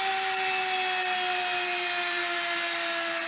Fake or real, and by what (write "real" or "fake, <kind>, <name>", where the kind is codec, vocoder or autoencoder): real